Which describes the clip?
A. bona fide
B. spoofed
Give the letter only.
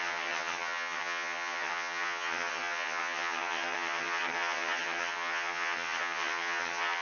B